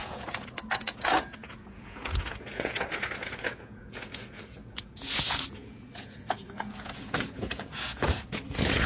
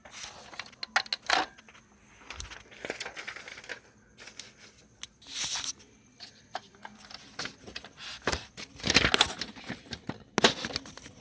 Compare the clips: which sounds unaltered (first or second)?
second